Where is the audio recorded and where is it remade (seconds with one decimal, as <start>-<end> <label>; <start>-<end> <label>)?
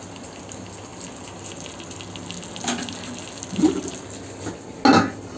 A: 0.0-5.4 recorded